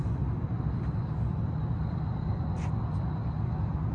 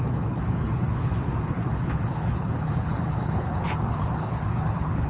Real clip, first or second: first